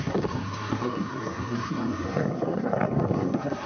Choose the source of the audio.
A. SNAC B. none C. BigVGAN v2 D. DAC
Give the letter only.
A